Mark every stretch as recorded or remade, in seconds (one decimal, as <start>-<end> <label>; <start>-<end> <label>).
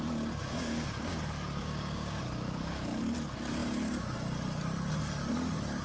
0.0-0.4 recorded; 0.4-1.2 remade; 1.2-1.6 recorded; 1.6-2.2 remade; 2.2-5.8 recorded